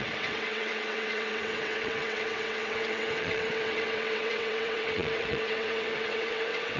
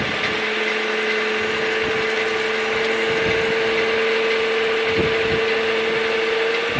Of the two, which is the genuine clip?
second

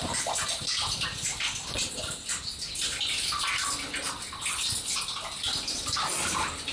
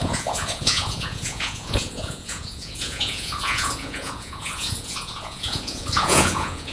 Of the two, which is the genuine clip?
first